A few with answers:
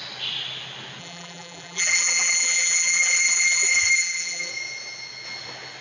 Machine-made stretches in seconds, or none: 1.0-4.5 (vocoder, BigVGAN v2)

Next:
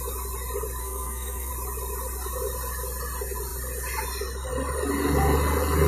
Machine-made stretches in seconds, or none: 0.8-1.5 (codec, SNAC)

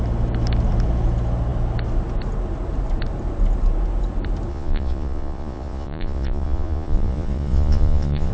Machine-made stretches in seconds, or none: 4.5-8.3 (vocoder, Vocos)

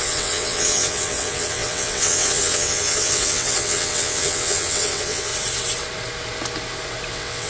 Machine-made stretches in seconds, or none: 0.0-5.3 (vocoder, WaveNeXt); 7.1-7.5